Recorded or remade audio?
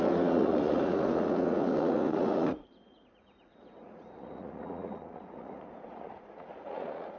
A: remade